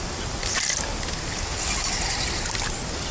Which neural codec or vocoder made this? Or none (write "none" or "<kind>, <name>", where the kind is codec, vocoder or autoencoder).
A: none